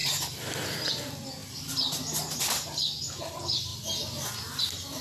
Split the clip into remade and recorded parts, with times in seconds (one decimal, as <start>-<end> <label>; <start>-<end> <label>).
0.0-5.0 recorded